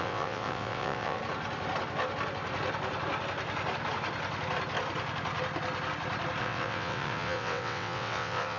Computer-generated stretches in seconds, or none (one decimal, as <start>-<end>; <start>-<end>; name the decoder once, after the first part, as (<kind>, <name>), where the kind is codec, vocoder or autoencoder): 0.0-1.2 (vocoder, WaveNeXt); 6.4-8.6